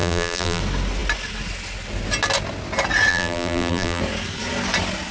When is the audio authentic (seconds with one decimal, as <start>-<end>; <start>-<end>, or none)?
0.6-3.1; 4.0-5.1